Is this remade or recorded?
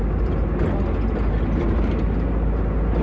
recorded